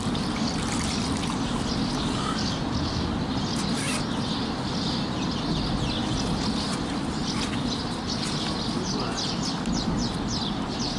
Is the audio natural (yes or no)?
yes